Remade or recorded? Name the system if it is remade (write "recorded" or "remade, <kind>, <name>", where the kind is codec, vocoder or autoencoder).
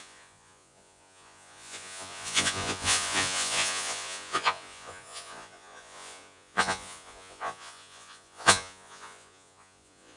remade, vocoder, Vocos